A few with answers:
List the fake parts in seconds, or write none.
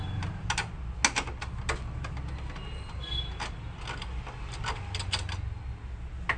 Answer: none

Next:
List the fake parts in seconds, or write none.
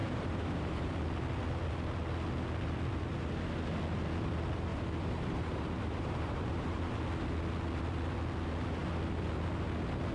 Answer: 0.0-0.9 (vocoder, BigVGAN v2); 4.7-7.0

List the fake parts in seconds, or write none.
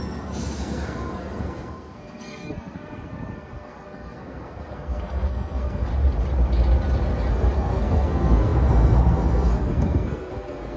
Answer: 0.0-5.9 (codec, SNAC); 7.3-10.8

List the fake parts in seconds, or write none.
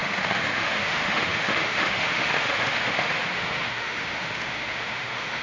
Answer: 0.0-5.4 (autoencoder, DAC-VAE)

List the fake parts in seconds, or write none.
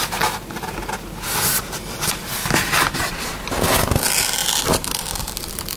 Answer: none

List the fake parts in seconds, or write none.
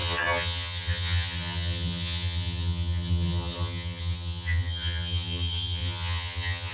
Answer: 0.0-6.7 (vocoder, HiFi-GAN)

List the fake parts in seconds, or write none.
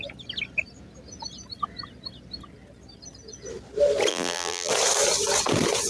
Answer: 4.1-4.7 (vocoder, BigVGAN v2)